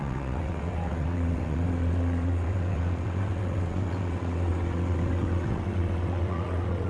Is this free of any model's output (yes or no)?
no